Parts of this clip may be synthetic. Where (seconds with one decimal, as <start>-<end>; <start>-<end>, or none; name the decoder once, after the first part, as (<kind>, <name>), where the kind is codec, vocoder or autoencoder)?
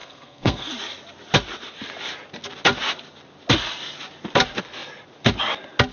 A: 0.0-0.7 (codec, SNAC)